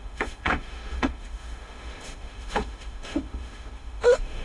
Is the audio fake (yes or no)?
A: yes